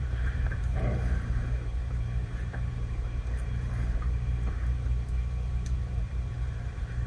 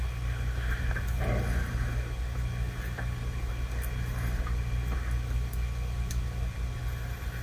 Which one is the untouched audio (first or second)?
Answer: second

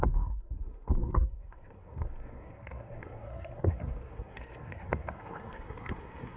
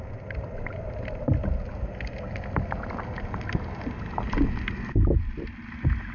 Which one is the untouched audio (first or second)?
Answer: second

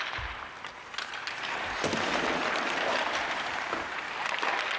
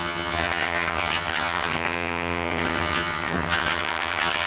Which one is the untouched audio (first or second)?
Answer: first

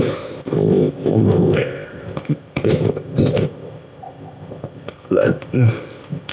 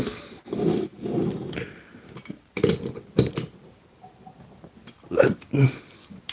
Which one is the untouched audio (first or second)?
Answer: second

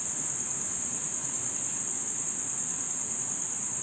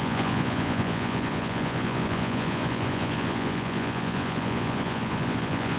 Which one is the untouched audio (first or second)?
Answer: first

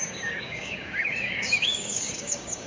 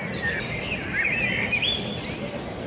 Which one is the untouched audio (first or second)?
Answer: second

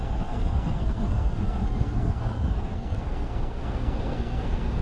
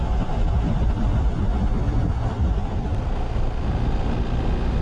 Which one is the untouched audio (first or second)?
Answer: second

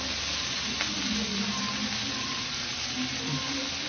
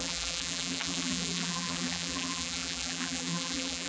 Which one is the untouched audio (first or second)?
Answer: first